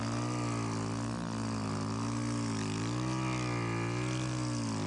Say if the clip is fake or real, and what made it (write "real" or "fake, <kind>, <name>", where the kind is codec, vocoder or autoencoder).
real